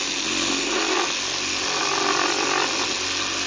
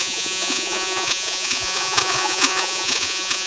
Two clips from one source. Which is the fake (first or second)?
second